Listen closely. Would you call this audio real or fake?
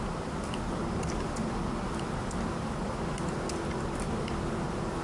real